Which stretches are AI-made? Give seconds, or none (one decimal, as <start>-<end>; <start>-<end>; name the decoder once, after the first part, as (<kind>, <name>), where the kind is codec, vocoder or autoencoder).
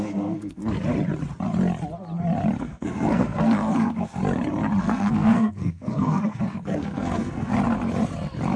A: 0.0-0.6 (codec, SNAC); 2.6-4.2; 4.8-7.5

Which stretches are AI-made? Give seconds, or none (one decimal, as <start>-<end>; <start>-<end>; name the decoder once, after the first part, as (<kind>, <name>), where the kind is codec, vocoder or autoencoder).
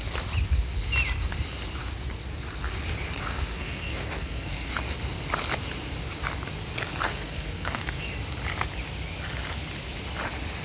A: 3.3-4.7 (codec, SNAC); 7.1-8.1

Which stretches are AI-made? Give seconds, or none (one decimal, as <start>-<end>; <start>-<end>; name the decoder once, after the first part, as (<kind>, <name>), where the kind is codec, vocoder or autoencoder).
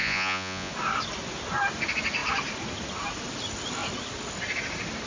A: 0.0-0.7 (vocoder, Vocos)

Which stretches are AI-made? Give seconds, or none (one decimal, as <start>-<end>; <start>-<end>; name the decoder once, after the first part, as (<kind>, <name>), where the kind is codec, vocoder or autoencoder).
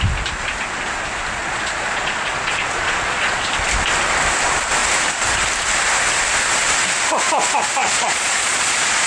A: 1.4-3.5 (vocoder, Vocos); 7.8-9.1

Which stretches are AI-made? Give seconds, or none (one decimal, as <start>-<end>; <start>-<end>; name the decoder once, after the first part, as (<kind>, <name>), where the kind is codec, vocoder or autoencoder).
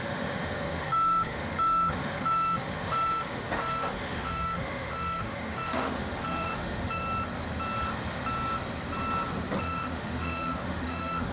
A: 0.0-7.0 (autoencoder, DAC-VAE); 9.6-11.3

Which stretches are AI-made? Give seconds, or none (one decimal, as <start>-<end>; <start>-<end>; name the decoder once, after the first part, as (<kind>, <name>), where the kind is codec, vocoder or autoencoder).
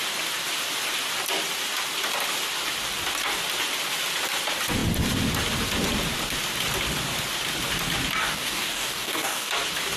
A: 8.2-9.5 (codec, DAC)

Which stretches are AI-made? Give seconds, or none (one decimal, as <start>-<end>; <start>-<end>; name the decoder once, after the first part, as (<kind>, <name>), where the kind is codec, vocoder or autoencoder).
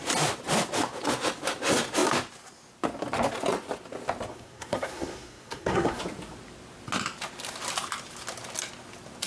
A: 4.3-6.0 (codec, SNAC)